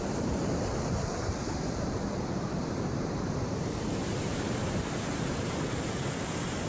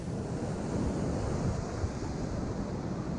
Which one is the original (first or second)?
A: second